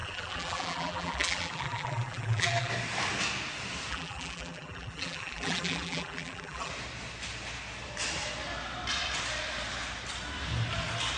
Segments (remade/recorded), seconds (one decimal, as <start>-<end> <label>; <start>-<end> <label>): 0.0-2.7 remade; 2.7-3.9 recorded; 3.9-6.7 remade; 6.7-11.2 recorded